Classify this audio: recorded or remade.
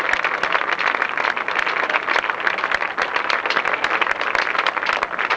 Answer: recorded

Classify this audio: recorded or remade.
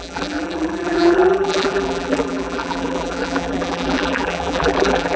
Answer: remade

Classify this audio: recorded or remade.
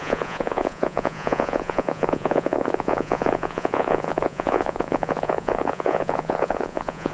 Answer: remade